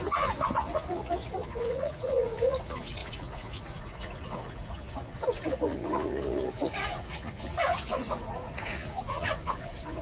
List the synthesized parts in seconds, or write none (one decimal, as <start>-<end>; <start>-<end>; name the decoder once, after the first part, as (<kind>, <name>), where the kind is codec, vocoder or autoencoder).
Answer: 0.0-10.0 (vocoder, Vocos)